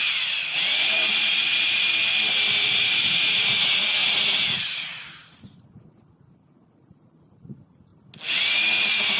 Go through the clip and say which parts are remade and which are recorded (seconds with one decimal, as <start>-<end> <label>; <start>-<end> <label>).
0.0-2.0 remade; 2.0-2.6 recorded; 2.6-7.9 remade; 7.9-8.4 recorded; 8.4-9.2 remade